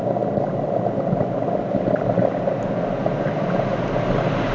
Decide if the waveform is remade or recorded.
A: recorded